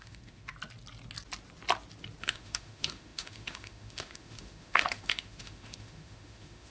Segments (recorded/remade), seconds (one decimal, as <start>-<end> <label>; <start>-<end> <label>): 0.0-0.5 remade; 0.5-2.2 recorded; 2.2-6.7 remade